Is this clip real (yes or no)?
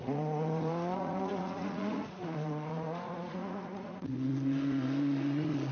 no